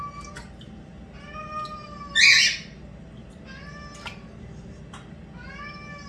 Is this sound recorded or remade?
recorded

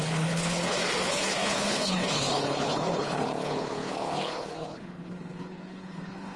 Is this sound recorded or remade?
remade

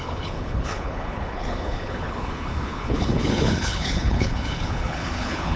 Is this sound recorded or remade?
remade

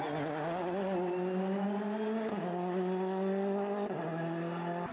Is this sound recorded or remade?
recorded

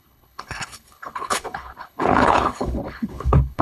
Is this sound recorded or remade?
remade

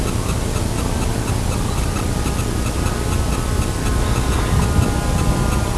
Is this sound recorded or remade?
recorded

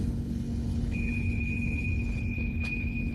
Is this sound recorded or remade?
remade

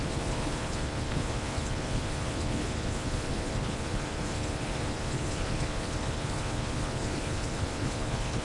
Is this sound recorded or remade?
remade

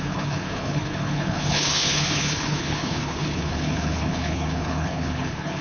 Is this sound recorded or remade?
remade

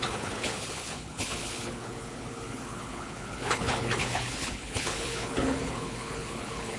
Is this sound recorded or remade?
remade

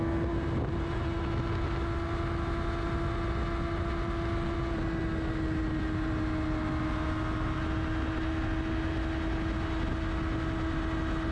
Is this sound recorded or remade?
recorded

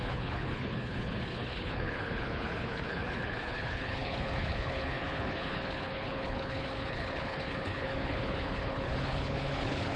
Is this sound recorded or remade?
remade